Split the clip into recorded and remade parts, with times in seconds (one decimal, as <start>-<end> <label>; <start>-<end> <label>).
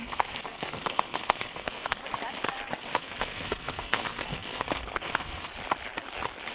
0.0-2.0 remade; 2.0-2.8 recorded; 2.8-5.5 remade; 5.5-6.5 recorded